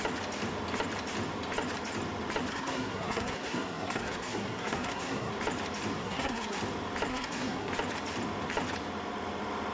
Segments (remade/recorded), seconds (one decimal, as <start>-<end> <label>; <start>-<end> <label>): 0.0-2.5 recorded; 2.5-5.3 remade; 5.3-6.0 recorded; 6.0-6.6 remade; 6.6-7.1 recorded; 7.1-7.7 remade; 7.7-9.7 recorded